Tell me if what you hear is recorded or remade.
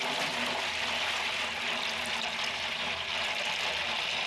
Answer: recorded